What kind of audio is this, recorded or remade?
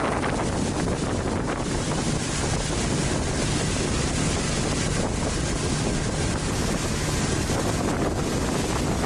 recorded